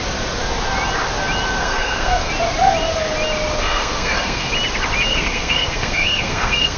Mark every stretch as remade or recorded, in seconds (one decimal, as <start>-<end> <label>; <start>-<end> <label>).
0.0-1.6 recorded; 1.6-2.3 remade; 2.3-3.6 recorded; 3.6-4.5 remade; 4.5-5.1 recorded; 5.1-6.8 remade